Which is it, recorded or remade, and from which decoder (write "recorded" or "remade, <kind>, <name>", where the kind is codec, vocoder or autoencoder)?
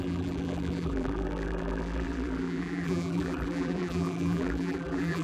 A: remade, vocoder, BigVGAN v2